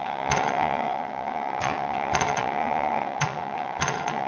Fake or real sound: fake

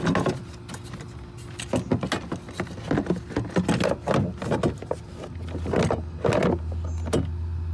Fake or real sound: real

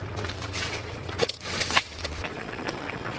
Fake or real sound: fake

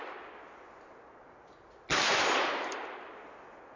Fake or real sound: real